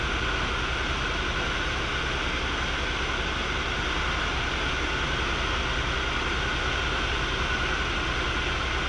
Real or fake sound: real